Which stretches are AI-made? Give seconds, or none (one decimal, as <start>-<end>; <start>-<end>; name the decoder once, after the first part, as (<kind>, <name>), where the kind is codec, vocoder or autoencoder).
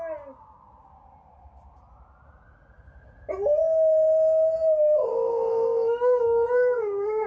5.1-7.3 (codec, SNAC)